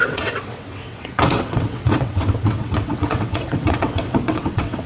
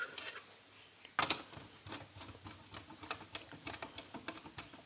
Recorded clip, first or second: second